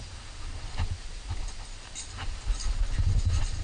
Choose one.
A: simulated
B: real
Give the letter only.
B